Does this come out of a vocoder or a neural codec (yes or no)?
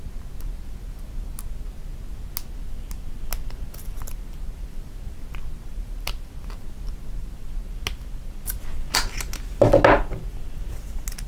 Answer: no